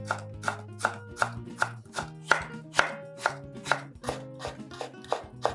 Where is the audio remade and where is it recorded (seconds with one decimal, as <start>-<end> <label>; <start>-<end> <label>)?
0.0-5.5 recorded